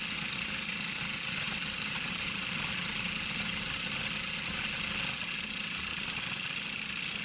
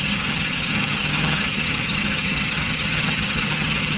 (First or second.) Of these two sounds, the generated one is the second